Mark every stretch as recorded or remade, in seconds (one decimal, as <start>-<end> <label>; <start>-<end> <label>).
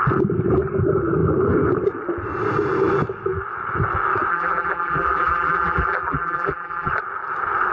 0.0-4.3 recorded; 4.3-6.9 remade; 6.9-7.7 recorded